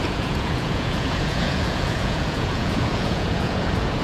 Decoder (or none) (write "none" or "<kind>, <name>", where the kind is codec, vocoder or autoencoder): vocoder, Vocos